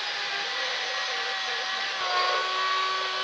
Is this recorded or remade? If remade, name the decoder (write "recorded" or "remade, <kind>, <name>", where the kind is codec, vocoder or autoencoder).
recorded